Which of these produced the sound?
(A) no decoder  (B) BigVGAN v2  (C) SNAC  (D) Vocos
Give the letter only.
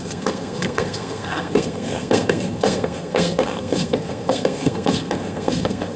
C